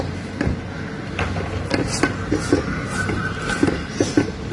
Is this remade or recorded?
recorded